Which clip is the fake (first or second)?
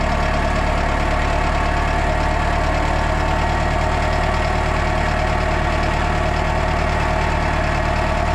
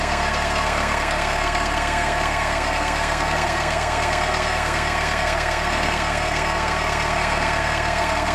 second